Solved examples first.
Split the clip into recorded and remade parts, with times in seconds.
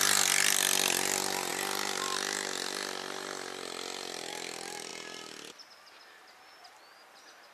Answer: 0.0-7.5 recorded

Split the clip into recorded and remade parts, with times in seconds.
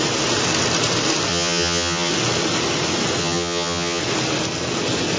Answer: 0.0-1.3 recorded; 1.3-2.1 remade; 2.1-3.2 recorded; 3.2-4.0 remade; 4.0-5.2 recorded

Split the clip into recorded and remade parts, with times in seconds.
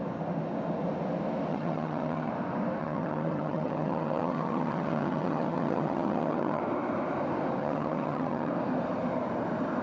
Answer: 0.0-1.5 recorded; 1.5-2.3 remade; 2.3-2.8 recorded; 2.8-6.6 remade; 6.6-7.6 recorded; 7.6-8.5 remade; 8.5-9.8 recorded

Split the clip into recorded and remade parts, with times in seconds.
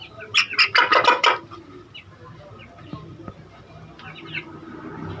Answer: 0.0-5.2 recorded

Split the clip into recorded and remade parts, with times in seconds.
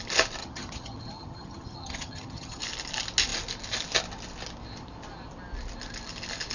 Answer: 0.0-0.4 recorded; 0.4-2.6 remade; 2.6-6.5 recorded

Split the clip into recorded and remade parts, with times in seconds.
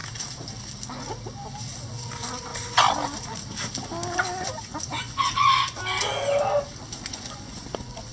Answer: 0.0-4.9 recorded; 4.9-5.8 remade; 5.8-7.1 recorded; 7.1-8.1 remade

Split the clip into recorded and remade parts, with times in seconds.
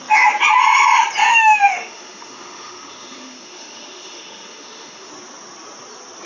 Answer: 0.0-1.3 recorded; 1.3-5.1 remade; 5.1-6.3 recorded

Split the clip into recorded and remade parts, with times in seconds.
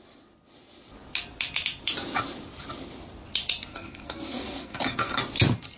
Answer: 0.0-3.7 recorded; 3.7-5.2 remade; 5.2-5.8 recorded